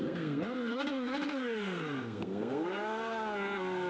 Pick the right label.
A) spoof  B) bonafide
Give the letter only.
A